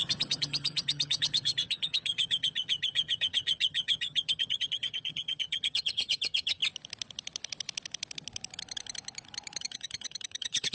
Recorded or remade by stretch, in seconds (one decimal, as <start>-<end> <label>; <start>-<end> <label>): 0.0-6.6 remade; 6.6-9.6 recorded; 9.6-10.7 remade